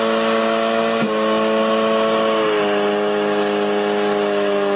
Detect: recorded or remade recorded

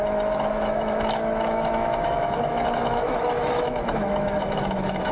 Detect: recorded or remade remade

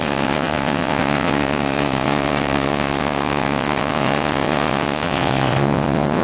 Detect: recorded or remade remade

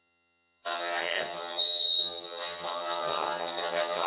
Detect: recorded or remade remade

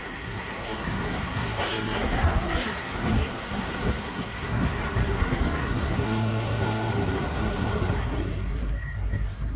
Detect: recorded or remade remade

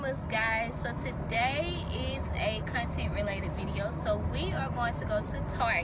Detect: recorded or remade recorded